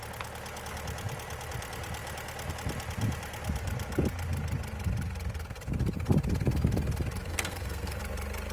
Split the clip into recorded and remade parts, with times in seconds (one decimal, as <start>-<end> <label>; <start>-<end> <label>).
0.0-7.3 recorded; 7.3-8.0 remade; 8.0-8.5 recorded

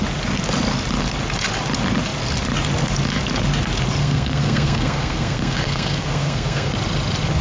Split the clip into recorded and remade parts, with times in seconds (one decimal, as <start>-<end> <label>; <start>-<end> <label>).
0.0-4.0 recorded; 4.0-6.7 remade; 6.7-7.4 recorded

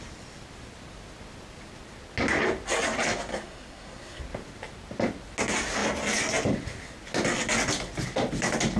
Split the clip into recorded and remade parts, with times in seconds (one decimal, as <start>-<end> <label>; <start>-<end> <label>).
0.0-3.3 recorded; 3.3-4.2 remade; 4.2-8.8 recorded

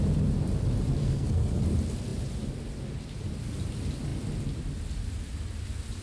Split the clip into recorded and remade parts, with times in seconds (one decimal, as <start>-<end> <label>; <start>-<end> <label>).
0.0-1.0 recorded; 1.0-1.6 remade; 1.6-6.0 recorded